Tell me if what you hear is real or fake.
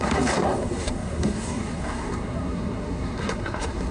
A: fake